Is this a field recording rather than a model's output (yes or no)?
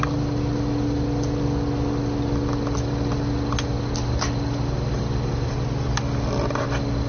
yes